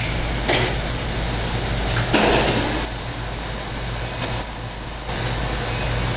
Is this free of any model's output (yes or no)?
yes